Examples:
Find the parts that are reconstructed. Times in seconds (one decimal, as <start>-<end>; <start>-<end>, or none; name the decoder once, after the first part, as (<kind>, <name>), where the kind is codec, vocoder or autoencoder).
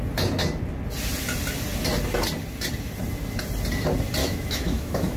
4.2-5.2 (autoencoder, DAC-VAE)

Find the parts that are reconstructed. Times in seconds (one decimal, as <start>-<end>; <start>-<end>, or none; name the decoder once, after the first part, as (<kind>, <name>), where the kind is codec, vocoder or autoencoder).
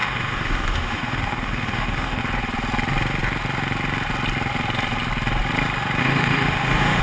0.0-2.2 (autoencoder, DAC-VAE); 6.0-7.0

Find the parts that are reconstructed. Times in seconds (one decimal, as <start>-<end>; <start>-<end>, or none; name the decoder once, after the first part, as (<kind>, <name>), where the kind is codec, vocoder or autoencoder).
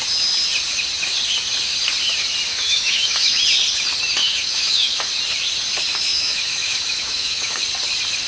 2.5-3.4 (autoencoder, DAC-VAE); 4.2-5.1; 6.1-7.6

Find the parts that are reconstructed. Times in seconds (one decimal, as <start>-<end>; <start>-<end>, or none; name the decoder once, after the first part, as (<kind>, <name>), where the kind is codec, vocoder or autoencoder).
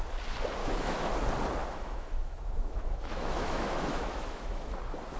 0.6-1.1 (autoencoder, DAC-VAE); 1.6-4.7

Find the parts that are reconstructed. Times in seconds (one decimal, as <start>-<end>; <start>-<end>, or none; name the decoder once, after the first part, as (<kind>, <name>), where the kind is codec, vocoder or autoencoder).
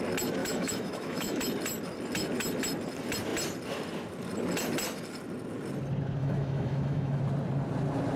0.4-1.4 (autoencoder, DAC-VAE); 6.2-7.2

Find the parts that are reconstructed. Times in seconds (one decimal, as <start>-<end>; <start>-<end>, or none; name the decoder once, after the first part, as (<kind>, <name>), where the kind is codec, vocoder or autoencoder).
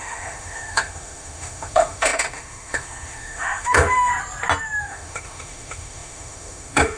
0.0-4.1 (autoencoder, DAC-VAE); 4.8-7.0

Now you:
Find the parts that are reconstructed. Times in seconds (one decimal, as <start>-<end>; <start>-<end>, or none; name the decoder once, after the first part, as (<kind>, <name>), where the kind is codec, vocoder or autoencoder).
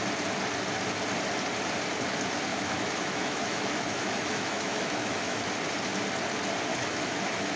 2.5-5.4 (autoencoder, DAC-VAE); 6.7-7.6